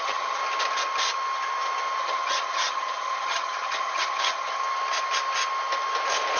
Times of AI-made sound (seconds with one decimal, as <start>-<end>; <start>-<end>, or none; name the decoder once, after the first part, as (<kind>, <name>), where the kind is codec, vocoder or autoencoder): 0.0-0.4 (vocoder, HiFi-GAN); 2.0-4.6